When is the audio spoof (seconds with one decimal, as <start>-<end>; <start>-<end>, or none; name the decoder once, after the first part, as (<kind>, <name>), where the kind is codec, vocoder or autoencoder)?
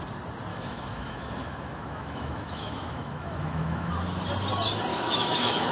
0.5-3.9 (autoencoder, DAC-VAE); 4.9-5.7